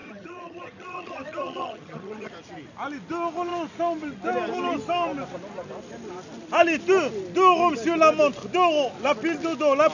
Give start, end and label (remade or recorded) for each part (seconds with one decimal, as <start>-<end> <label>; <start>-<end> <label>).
0.0-2.3 remade; 2.3-9.9 recorded